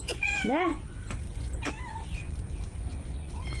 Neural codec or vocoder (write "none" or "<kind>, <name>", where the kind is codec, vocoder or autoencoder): vocoder, Vocos